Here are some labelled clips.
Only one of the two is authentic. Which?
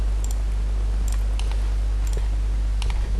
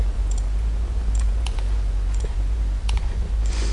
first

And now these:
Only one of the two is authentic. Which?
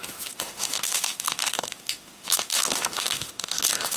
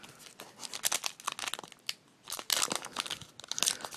second